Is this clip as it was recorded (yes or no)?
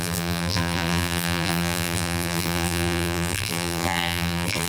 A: no